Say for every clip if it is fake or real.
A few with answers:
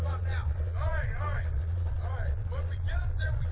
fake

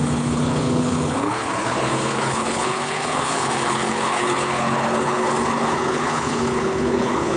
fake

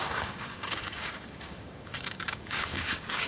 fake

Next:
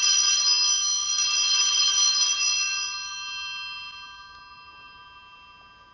real